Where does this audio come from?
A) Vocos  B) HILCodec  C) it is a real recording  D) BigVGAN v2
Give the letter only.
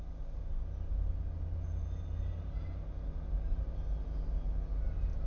C